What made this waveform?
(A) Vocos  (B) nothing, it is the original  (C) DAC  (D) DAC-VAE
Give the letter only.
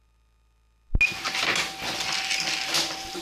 B